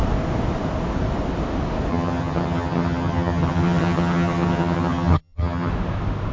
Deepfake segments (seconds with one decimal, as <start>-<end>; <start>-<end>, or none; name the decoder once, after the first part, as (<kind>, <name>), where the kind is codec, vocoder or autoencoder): 1.9-5.7 (vocoder, HiFi-GAN)